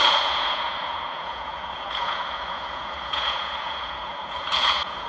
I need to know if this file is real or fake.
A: fake